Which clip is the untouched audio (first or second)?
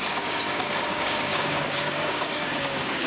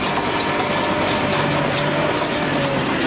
second